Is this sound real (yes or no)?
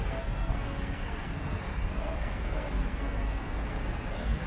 no